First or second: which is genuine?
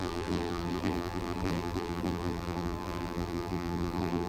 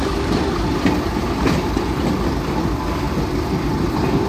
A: second